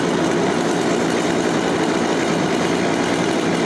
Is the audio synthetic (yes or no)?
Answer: no